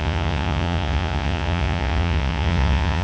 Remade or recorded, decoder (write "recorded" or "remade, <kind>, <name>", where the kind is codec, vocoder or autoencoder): remade, vocoder, Vocos